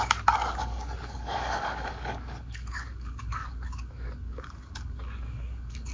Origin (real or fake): fake